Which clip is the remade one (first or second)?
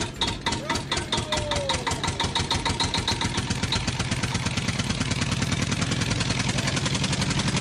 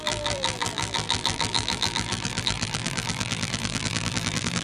second